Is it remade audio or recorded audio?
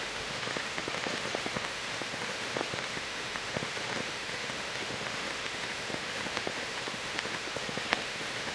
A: remade